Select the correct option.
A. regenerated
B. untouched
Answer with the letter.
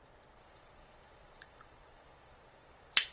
A